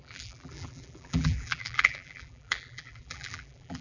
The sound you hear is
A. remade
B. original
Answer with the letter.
A